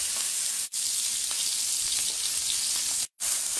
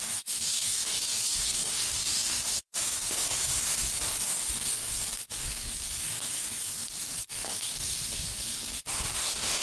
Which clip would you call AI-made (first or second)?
second